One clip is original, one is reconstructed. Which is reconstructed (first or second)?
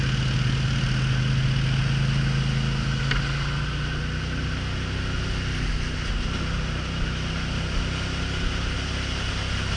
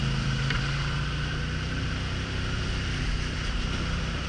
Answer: second